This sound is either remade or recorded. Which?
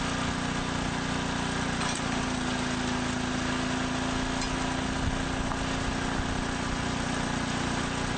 recorded